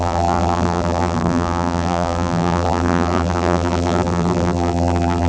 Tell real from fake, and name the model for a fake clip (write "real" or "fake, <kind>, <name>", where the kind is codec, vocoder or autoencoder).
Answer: fake, vocoder, BigVGAN v2